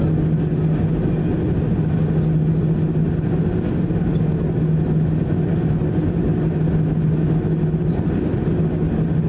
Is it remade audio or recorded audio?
recorded